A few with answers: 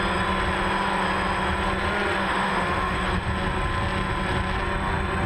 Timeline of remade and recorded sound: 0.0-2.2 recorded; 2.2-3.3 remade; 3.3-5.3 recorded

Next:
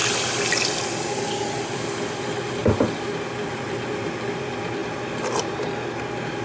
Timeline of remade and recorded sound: 0.0-1.2 recorded; 1.2-2.6 remade; 2.6-3.5 recorded; 3.5-6.4 remade

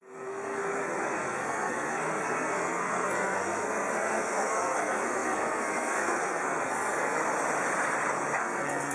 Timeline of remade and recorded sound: 0.0-7.2 remade; 7.2-8.4 recorded; 8.4-8.9 remade

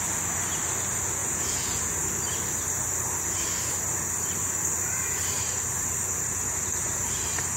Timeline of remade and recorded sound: 0.0-1.2 recorded; 1.2-1.9 remade; 1.9-7.6 recorded

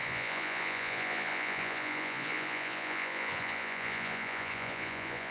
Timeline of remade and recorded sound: 0.0-5.3 remade